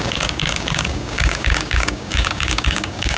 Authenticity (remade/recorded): remade